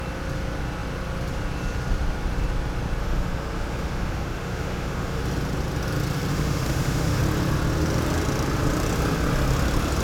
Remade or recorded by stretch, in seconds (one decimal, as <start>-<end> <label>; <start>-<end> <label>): 0.0-3.0 recorded; 3.0-5.2 remade; 5.2-6.3 recorded; 6.3-7.2 remade; 7.2-10.0 recorded